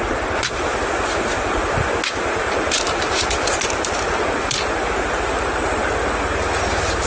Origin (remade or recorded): recorded